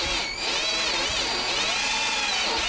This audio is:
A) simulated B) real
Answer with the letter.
B